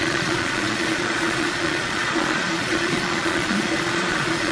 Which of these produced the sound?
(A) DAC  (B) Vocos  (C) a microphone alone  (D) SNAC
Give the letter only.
B